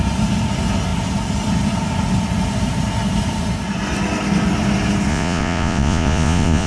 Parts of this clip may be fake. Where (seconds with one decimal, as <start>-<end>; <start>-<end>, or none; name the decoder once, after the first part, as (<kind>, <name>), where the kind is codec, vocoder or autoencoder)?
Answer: 5.1-6.7 (vocoder, Vocos)